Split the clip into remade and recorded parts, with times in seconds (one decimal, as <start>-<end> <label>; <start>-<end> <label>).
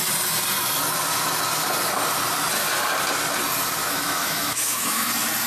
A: 0.0-3.8 recorded; 3.8-5.1 remade; 5.1-5.5 recorded